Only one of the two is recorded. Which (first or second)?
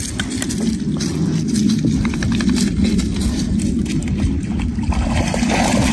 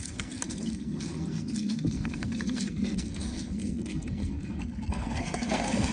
first